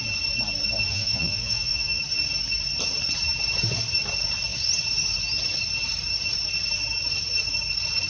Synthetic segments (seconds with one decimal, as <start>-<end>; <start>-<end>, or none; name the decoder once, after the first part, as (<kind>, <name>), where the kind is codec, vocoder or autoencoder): 0.9-2.0 (vocoder, Vocos)

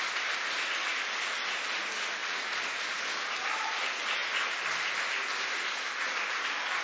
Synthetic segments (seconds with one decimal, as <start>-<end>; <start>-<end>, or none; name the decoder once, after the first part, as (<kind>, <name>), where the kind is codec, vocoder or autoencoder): 2.2-2.8 (vocoder, Vocos)

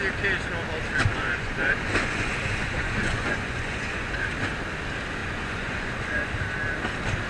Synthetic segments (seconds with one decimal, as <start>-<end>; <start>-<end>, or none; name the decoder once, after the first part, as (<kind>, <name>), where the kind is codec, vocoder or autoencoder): 1.1-4.3 (vocoder, Vocos); 5.2-6.3